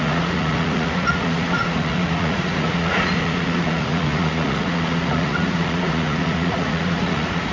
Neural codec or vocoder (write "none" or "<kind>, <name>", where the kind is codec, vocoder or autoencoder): vocoder, Vocos